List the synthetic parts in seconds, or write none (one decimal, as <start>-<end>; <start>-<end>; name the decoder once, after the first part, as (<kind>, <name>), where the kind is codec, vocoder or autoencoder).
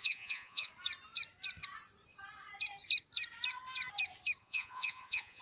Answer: 0.0-0.7 (vocoder, Vocos); 4.4-5.4